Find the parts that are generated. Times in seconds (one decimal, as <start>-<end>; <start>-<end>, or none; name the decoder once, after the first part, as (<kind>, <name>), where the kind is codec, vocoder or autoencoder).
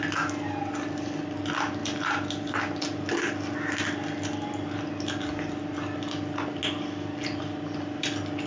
none